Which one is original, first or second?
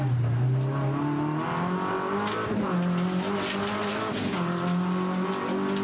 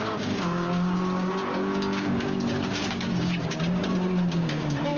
first